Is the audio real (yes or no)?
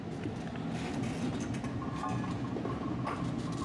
yes